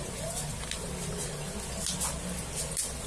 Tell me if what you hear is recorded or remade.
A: recorded